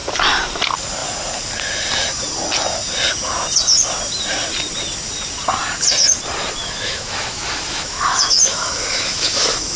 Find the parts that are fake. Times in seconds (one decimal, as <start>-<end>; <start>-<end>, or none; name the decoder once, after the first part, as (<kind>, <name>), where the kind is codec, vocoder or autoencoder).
6.6-9.8 (autoencoder, DAC-VAE)